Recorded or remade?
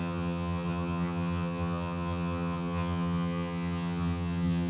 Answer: remade